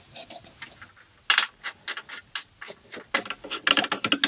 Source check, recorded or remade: recorded